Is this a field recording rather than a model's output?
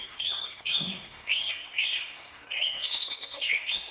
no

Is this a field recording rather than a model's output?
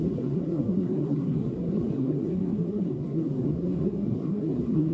no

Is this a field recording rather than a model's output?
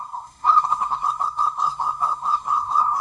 no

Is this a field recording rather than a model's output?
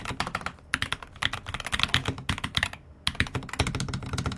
yes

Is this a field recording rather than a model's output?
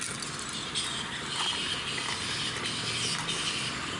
yes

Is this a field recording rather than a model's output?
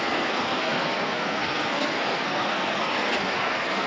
no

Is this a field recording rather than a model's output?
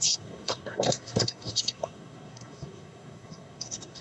no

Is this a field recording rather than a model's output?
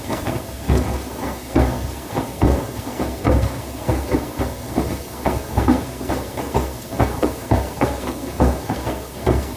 no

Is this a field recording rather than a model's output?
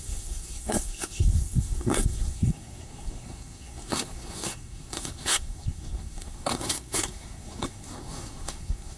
no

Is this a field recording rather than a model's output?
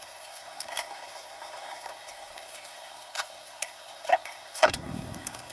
no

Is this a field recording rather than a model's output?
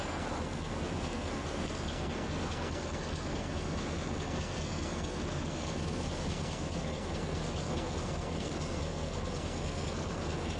no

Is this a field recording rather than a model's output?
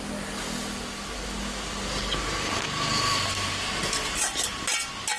yes